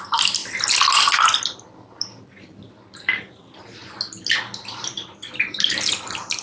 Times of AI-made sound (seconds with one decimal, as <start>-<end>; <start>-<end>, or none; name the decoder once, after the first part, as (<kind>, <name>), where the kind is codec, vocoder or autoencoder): none